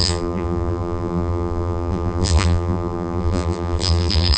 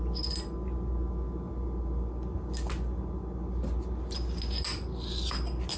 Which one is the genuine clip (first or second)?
second